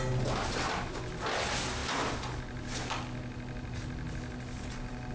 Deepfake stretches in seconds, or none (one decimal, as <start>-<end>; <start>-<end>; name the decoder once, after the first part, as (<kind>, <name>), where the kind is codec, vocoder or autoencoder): none